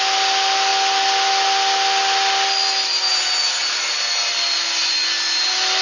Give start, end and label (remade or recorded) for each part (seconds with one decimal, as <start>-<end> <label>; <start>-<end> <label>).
0.0-5.8 recorded